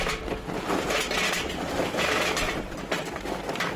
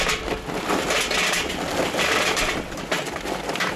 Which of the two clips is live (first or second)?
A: first